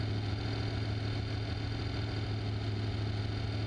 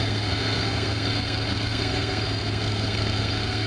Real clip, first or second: first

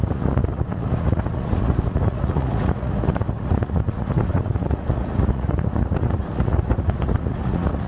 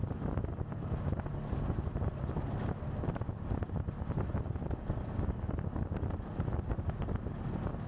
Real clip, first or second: second